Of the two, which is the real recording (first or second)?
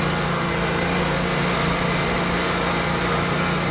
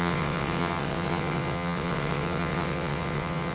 first